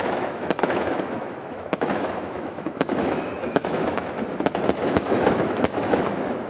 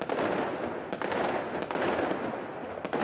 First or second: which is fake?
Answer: first